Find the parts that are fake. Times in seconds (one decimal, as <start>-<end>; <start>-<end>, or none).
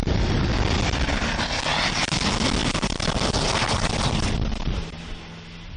none